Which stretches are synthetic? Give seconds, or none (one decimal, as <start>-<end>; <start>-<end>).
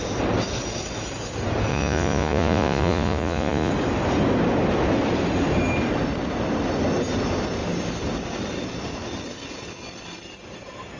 1.7-3.7